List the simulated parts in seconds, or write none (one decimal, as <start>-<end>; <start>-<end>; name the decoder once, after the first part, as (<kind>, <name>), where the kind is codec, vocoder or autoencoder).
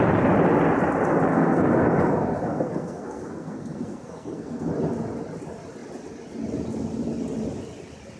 1.3-4.7 (codec, SNAC)